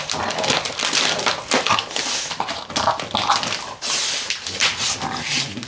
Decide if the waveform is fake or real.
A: real